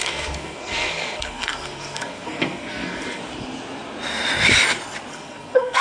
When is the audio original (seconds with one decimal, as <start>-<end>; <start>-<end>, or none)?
3.2-5.1